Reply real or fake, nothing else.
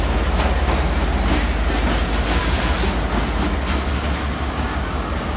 real